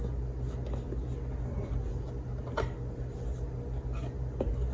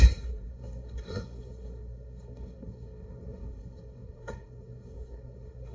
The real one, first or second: first